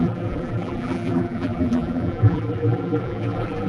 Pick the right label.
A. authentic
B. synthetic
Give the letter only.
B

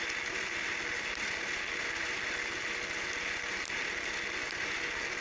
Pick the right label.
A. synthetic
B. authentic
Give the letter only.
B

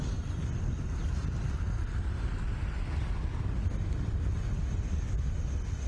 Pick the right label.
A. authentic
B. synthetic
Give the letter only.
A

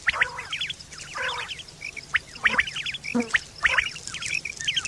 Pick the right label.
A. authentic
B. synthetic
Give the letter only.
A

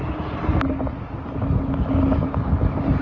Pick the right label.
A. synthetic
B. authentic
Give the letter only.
B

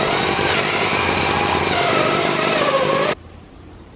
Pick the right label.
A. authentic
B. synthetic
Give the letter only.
B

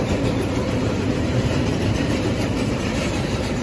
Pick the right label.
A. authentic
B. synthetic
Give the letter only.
B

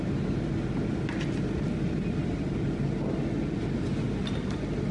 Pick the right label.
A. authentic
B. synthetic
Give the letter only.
A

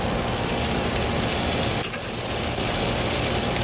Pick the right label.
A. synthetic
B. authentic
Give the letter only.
B